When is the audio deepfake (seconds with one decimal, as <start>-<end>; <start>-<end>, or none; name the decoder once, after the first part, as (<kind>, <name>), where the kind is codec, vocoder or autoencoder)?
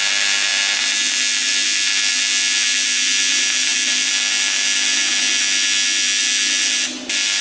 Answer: none